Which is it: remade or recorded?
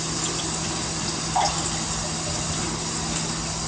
recorded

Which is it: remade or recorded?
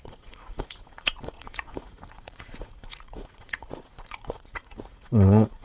remade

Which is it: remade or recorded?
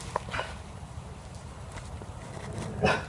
recorded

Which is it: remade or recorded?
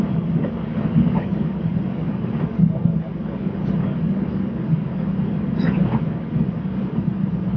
remade